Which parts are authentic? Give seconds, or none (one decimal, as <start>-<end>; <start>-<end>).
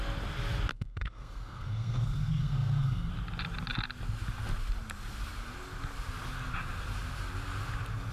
0.0-0.7; 3.1-8.1